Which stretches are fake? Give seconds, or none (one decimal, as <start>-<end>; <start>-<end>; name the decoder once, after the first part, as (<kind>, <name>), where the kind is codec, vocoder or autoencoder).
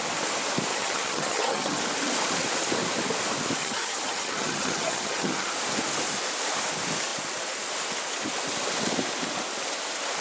0.7-1.8 (vocoder, HiFi-GAN); 3.6-5.5